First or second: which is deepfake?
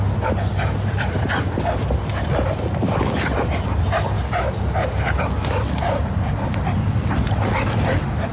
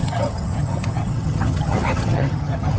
second